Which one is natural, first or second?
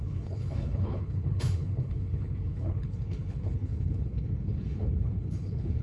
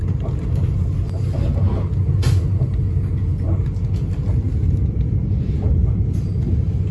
second